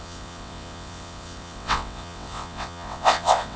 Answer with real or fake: fake